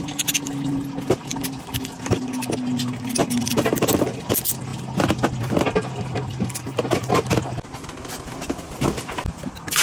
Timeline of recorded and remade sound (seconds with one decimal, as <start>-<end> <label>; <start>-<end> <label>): 0.0-1.3 recorded; 1.3-2.2 remade; 2.2-3.2 recorded; 3.2-4.3 remade; 4.3-4.7 recorded; 4.7-7.1 remade; 7.1-9.8 recorded